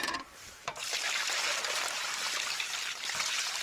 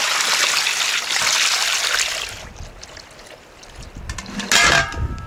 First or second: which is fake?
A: first